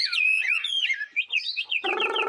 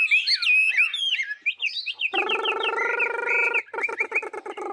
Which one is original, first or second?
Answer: second